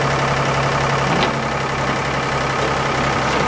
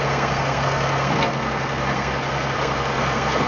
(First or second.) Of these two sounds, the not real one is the second